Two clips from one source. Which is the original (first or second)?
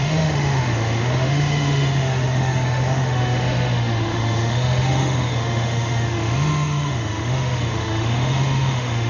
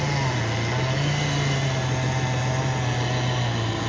second